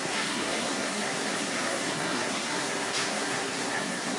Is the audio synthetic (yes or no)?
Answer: yes